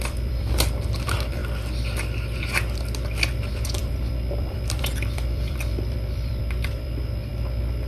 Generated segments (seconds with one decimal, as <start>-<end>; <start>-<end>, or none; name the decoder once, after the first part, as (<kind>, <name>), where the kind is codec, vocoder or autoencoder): 0.0-1.4 (vocoder, BigVGAN v2); 3.4-7.3